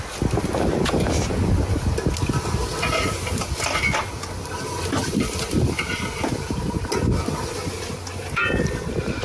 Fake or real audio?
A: real